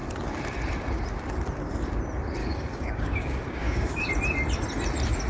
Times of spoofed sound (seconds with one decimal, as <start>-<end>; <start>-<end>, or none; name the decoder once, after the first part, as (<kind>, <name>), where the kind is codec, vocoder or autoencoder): 2.4-4.1 (codec, DAC)